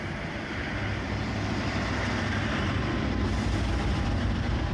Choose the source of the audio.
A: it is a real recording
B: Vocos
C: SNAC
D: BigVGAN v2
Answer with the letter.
D